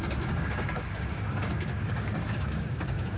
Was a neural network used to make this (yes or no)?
yes